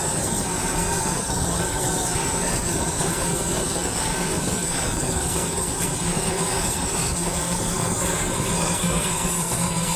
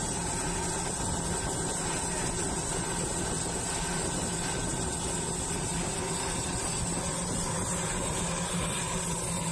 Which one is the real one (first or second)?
second